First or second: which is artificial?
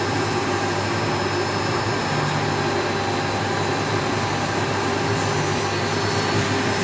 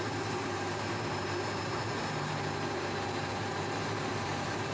second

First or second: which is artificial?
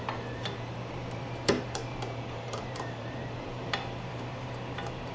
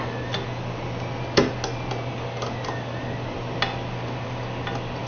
first